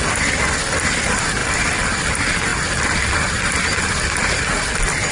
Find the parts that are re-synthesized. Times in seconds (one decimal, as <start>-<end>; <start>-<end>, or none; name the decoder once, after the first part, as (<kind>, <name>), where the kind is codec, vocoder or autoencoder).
1.4-2.1 (vocoder, BigVGAN v2); 2.5-3.4